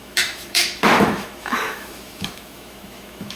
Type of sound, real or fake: fake